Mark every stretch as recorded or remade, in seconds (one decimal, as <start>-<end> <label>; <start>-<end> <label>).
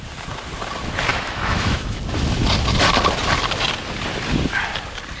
0.0-1.1 recorded; 1.1-2.0 remade; 2.0-5.2 recorded